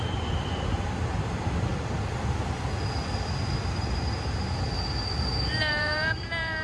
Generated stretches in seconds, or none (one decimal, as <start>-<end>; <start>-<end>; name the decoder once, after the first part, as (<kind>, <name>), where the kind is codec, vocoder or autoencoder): 0.0-1.7 (vocoder, BigVGAN v2); 5.7-6.6